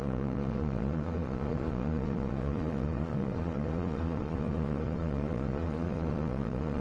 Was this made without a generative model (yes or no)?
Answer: no